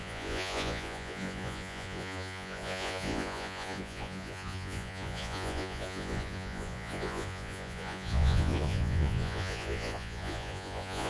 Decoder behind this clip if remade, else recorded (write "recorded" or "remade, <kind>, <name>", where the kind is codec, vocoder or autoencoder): remade, vocoder, Vocos